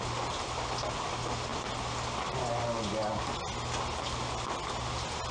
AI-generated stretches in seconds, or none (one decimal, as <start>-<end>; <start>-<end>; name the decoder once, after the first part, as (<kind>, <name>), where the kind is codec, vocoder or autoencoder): none